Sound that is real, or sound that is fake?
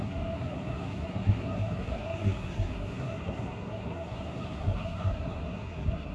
fake